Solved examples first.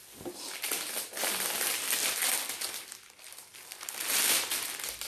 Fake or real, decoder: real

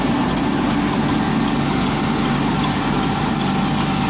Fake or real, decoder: real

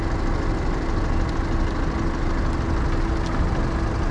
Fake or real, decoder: real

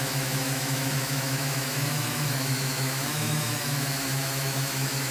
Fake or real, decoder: fake, autoencoder, DAC-VAE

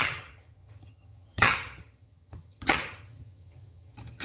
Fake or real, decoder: fake, vocoder, HiFi-GAN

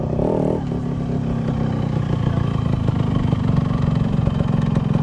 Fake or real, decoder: real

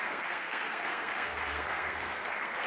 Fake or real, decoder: fake, codec, SNAC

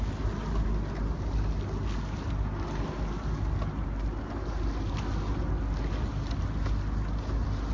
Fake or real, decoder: real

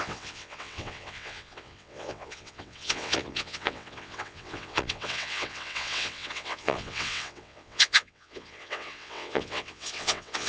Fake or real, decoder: fake, vocoder, WaveNeXt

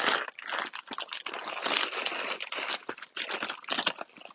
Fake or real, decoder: real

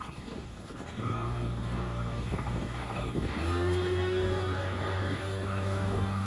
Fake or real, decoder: fake, codec, DAC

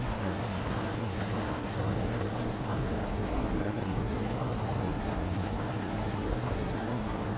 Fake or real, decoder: fake, codec, SNAC